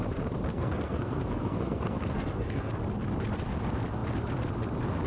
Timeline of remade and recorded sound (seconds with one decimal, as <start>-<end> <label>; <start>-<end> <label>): 0.0-0.5 recorded; 0.5-2.7 remade; 2.7-5.1 recorded